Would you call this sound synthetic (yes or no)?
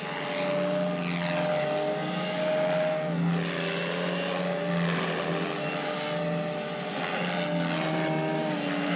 no